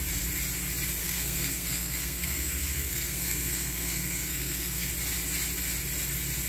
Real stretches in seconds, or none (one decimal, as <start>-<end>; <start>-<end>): 0.0-1.0; 4.9-6.5